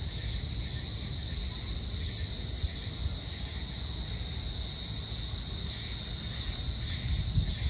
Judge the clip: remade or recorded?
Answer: recorded